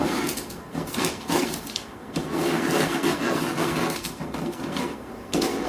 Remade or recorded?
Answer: remade